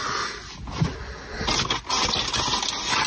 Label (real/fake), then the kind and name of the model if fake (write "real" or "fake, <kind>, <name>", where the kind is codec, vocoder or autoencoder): real